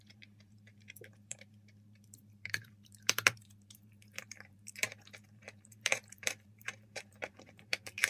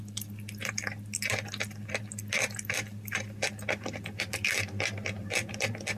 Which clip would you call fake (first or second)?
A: first